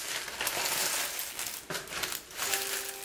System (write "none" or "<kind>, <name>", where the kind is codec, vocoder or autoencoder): none